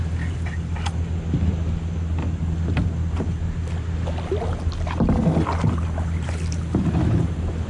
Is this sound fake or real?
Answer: real